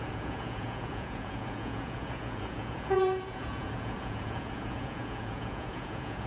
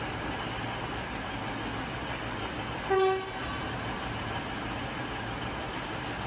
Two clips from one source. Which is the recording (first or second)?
second